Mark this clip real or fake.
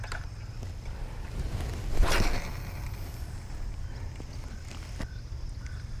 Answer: real